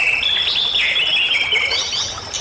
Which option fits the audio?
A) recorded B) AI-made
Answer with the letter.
A